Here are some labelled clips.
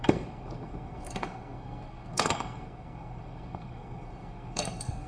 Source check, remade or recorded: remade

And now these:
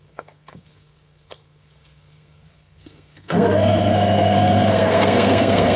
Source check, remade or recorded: remade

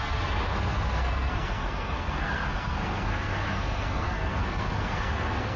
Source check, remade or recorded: remade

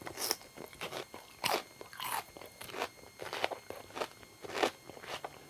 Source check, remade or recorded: recorded